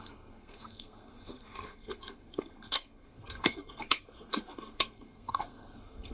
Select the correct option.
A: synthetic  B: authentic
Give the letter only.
A